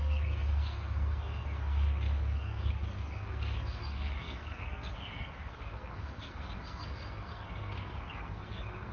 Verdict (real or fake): fake